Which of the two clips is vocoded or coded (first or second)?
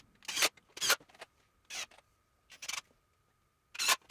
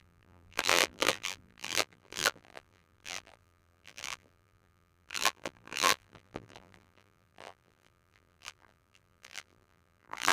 second